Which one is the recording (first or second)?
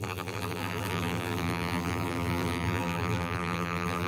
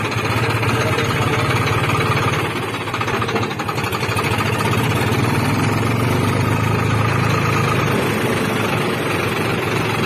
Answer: second